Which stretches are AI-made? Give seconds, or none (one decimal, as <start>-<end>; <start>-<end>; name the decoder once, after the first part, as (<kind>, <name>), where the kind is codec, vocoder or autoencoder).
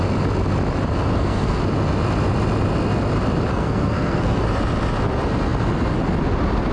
1.1-1.6 (codec, SNAC); 3.5-4.4